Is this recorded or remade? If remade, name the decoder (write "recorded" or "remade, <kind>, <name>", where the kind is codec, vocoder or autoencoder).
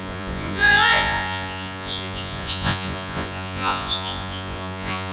remade, vocoder, Vocos